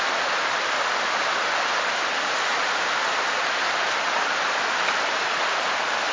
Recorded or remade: recorded